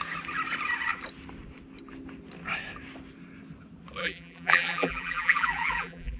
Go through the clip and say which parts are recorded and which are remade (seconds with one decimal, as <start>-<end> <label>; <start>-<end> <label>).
0.0-4.0 recorded; 4.0-6.2 remade